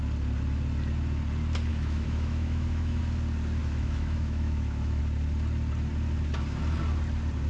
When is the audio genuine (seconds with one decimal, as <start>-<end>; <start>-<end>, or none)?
0.0-1.7; 3.0-3.6; 5.0-7.5